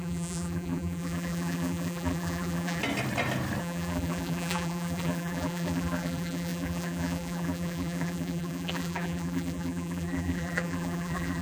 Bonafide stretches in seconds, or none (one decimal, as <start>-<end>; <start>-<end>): 2.8-3.6